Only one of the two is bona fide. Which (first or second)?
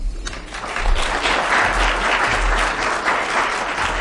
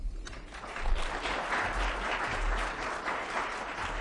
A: first